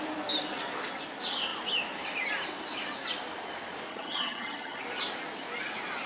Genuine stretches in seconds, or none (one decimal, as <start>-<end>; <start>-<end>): 0.0-3.9; 4.8-6.1